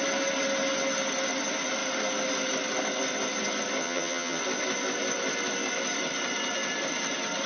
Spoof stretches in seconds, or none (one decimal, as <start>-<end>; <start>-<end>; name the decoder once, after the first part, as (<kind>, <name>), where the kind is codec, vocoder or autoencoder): 3.8-4.4 (vocoder, HiFi-GAN)